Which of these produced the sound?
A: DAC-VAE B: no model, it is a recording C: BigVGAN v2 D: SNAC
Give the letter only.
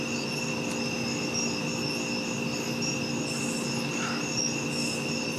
B